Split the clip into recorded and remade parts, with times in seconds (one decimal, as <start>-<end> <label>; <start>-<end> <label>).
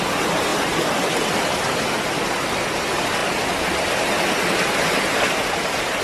0.0-6.0 recorded